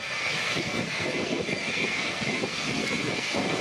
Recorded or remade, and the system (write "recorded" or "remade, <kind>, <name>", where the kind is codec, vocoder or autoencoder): remade, codec, SNAC